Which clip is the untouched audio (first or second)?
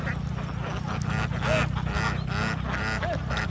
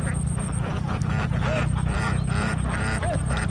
first